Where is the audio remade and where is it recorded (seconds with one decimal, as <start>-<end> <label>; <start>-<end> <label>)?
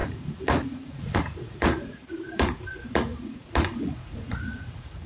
0.0-5.1 remade